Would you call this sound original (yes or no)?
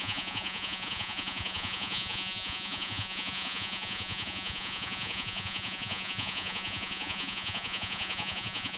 no